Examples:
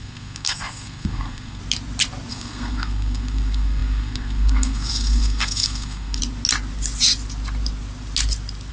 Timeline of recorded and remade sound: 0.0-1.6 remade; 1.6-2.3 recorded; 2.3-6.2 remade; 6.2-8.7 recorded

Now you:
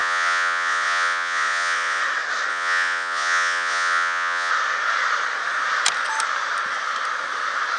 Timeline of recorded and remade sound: 0.0-2.0 remade; 2.0-2.5 recorded; 2.5-4.5 remade; 4.5-7.8 recorded

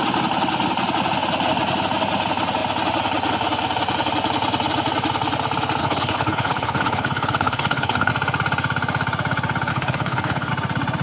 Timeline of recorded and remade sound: 0.0-5.8 recorded; 5.8-8.1 remade; 8.1-9.7 recorded; 9.7-10.5 remade; 10.5-11.0 recorded

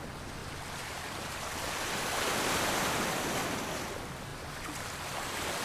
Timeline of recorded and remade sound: 0.0-0.4 recorded; 0.4-3.6 remade; 3.6-4.3 recorded; 4.3-5.6 remade

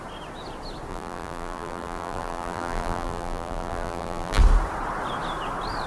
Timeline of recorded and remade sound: 0.0-0.9 recorded; 0.9-4.4 remade; 4.4-5.9 recorded

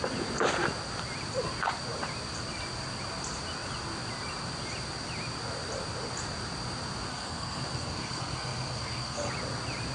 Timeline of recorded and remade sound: 0.0-7.1 recorded; 7.1-9.3 remade; 9.3-9.9 recorded

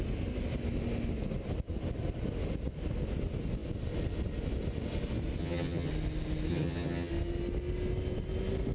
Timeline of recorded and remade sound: 0.0-5.4 recorded; 5.4-5.9 remade; 5.9-6.5 recorded; 6.5-7.1 remade; 7.1-8.7 recorded

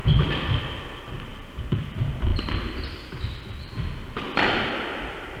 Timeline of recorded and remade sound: 0.0-5.4 recorded